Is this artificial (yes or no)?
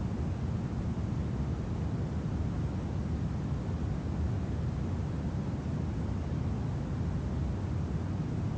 no